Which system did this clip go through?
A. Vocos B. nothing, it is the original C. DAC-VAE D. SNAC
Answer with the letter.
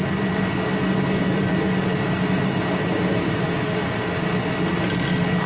B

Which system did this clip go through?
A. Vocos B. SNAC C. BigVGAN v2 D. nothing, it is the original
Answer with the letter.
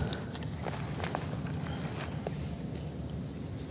D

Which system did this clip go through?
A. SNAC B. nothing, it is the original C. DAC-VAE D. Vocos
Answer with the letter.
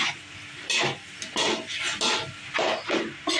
B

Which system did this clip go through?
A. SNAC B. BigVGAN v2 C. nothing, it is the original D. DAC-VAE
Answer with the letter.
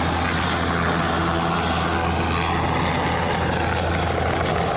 C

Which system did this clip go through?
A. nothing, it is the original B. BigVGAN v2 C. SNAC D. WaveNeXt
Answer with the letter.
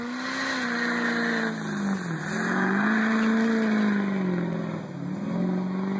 A